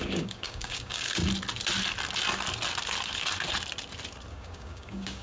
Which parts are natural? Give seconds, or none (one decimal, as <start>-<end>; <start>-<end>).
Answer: 1.2-4.3